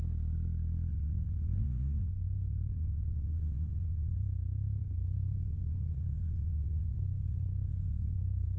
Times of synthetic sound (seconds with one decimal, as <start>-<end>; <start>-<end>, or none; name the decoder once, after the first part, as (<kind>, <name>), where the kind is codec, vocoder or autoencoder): 0.9-4.2 (vocoder, Vocos); 4.8-8.6